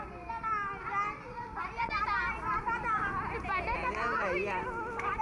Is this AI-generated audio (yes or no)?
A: no